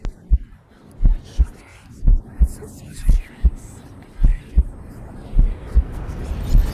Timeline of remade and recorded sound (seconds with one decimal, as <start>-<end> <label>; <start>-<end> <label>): 0.0-5.5 recorded; 5.5-6.2 remade; 6.2-6.7 recorded